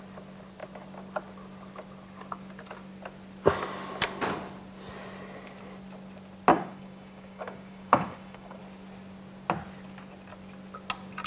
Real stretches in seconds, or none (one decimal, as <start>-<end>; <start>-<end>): 0.0-6.5; 8.6-11.3